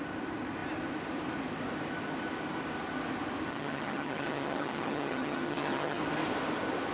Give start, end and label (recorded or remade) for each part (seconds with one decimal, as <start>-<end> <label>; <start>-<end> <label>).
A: 0.0-3.5 recorded; 3.5-6.0 remade; 6.0-6.9 recorded